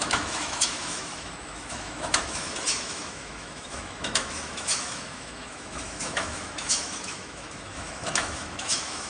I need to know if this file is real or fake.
fake